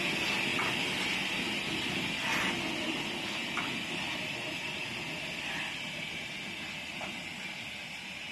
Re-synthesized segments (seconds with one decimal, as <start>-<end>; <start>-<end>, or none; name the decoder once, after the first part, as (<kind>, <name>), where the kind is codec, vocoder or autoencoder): none